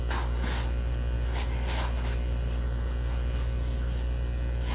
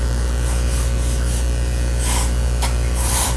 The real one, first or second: first